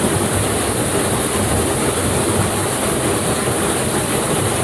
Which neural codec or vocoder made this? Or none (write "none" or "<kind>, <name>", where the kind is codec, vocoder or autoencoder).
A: none